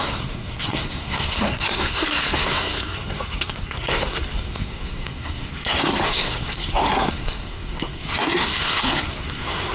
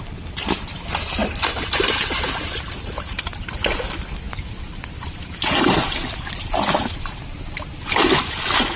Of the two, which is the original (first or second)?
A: second